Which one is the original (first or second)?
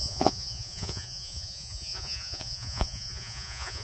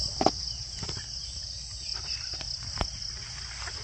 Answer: second